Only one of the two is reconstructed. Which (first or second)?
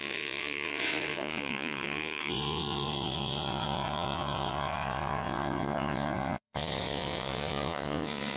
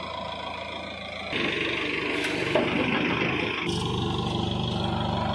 first